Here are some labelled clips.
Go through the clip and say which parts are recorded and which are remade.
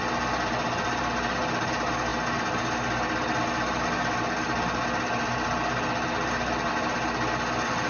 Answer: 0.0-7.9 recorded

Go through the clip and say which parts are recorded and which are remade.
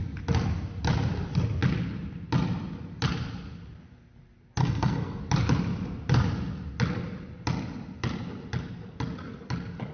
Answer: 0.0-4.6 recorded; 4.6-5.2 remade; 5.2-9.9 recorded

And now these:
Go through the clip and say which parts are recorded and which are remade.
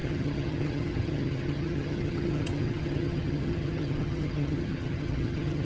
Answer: 0.0-5.6 remade